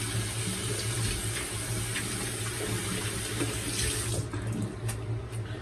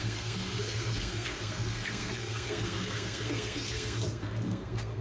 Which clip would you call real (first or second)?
first